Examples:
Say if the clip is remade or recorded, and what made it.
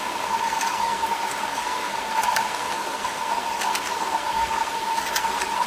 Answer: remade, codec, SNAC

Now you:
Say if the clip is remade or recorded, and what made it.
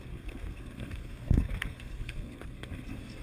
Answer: remade, codec, SNAC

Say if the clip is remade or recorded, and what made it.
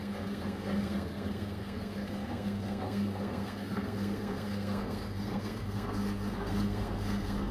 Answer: remade, codec, SNAC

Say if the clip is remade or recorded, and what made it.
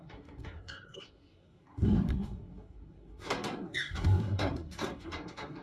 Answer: remade, codec, SNAC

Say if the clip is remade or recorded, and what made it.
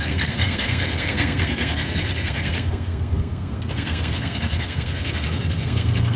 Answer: remade, codec, SNAC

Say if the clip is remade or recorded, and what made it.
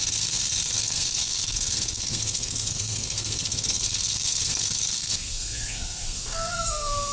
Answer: remade, codec, SNAC